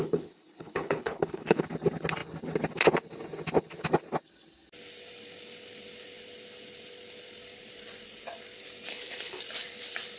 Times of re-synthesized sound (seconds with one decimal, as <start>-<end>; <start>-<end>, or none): 0.0-1.6; 8.9-9.4